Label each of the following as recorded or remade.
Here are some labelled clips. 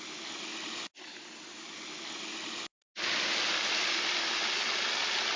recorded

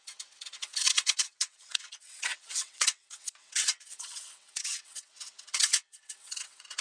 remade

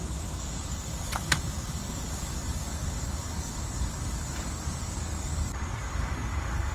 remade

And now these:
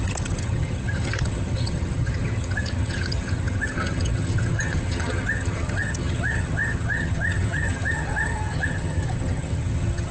remade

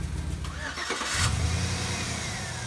recorded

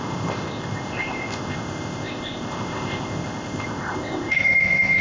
remade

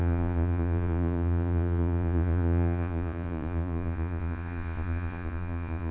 remade